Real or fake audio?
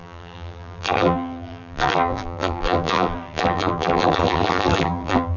fake